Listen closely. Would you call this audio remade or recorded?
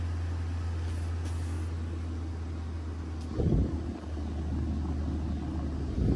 recorded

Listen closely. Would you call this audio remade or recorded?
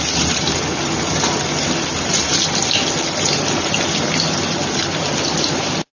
recorded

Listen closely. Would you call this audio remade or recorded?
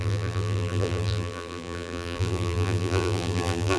remade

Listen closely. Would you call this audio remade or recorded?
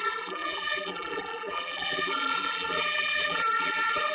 remade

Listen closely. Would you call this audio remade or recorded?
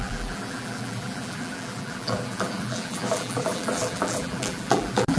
remade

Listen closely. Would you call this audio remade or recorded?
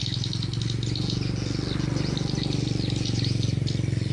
recorded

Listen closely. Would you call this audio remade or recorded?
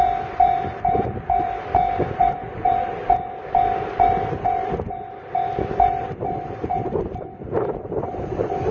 remade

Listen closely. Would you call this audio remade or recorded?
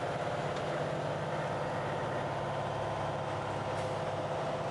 recorded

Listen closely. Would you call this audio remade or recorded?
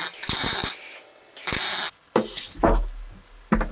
recorded